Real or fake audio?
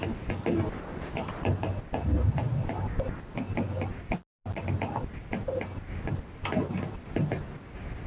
real